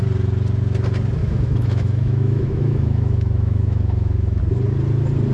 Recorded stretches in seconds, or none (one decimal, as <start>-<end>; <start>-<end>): 0.0-1.2; 4.4-5.3